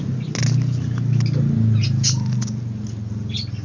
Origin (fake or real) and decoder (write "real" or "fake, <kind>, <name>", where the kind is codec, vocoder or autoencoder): real